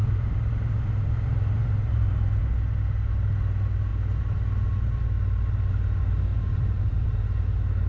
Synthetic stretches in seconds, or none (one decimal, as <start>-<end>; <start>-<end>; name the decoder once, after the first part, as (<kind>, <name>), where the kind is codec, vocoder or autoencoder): 0.0-2.4 (vocoder, BigVGAN v2); 6.3-7.4